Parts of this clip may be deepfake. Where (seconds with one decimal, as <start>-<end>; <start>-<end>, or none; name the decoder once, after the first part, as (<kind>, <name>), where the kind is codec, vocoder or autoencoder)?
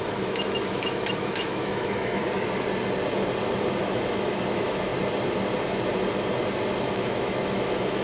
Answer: 0.0-2.2 (autoencoder, DAC-VAE); 3.8-4.9; 6.9-8.0